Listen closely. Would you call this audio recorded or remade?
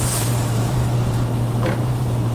remade